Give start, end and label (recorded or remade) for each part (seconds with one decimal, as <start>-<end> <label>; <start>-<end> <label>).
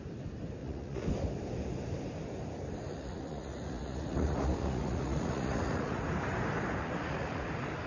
0.0-0.6 recorded; 0.6-1.1 remade; 1.1-2.9 recorded; 2.9-6.0 remade; 6.0-6.8 recorded; 6.8-7.4 remade; 7.4-7.9 recorded